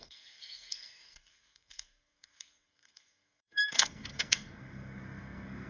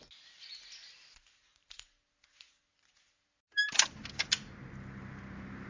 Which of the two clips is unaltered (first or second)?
second